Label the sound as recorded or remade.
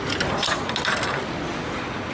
recorded